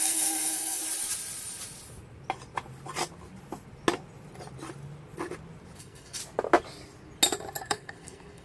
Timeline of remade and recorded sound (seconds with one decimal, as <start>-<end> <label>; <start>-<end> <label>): 0.0-0.8 remade; 0.8-5.8 recorded; 5.8-6.2 remade; 6.2-7.6 recorded; 7.6-8.4 remade